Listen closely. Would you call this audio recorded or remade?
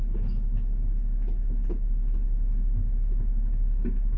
recorded